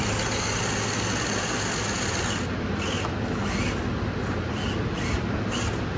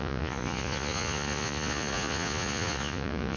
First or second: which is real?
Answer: first